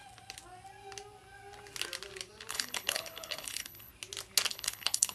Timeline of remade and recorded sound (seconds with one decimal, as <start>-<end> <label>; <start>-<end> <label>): 0.0-2.5 recorded; 2.5-3.9 remade; 3.9-4.5 recorded; 4.5-5.1 remade